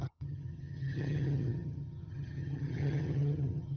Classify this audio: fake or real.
fake